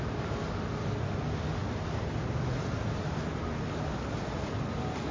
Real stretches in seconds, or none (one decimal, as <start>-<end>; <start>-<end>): 0.0-5.1